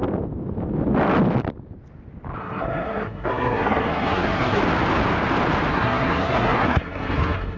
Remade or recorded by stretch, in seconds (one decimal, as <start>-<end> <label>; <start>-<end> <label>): 0.0-2.4 recorded; 2.4-4.6 remade; 4.6-5.7 recorded; 5.7-7.6 remade